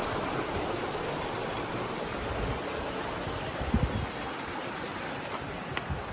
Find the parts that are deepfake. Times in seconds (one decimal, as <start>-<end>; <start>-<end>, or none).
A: 0.0-1.3